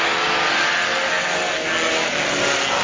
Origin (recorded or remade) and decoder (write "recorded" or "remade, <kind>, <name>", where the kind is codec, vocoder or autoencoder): recorded